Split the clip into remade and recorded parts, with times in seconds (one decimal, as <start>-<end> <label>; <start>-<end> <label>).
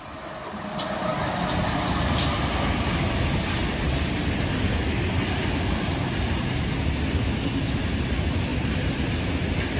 0.0-9.8 recorded